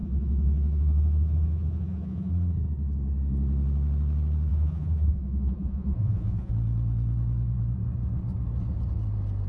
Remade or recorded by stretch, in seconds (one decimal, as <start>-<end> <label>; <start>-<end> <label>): 0.0-2.3 remade; 2.3-4.5 recorded; 4.5-6.5 remade; 6.5-9.5 recorded